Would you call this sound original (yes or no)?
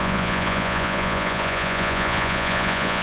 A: no